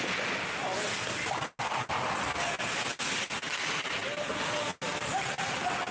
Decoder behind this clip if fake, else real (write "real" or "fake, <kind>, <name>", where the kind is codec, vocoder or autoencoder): real